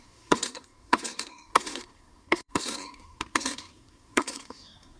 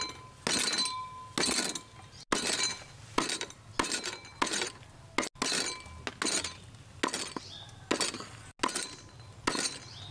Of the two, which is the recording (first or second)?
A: second